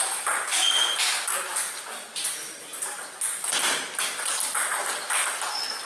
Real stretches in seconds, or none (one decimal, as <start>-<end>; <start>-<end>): 0.0-5.9